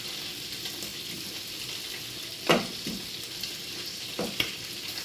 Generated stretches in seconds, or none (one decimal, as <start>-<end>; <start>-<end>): none